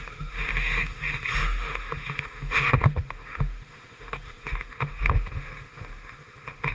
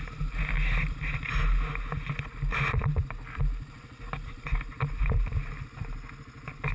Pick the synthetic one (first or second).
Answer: first